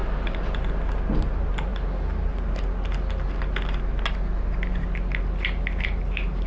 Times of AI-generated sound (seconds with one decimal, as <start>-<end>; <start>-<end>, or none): 0.0-0.7

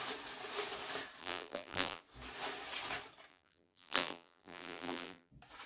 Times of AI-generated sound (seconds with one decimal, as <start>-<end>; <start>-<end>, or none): 1.2-2.0; 3.3-5.3

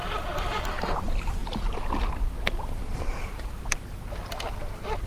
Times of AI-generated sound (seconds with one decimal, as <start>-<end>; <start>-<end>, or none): 0.0-0.6; 2.9-3.4

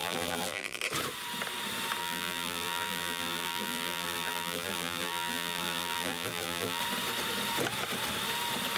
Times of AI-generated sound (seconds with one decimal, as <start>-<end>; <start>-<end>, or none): 0.0-0.8; 2.0-6.8

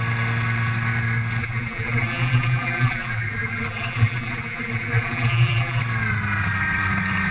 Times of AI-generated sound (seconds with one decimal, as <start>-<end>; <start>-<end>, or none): 1.4-5.8

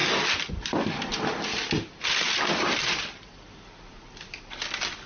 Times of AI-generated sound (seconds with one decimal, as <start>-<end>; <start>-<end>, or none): 0.5-5.1